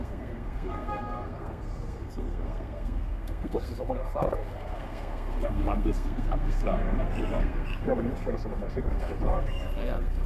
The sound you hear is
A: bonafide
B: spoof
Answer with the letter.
B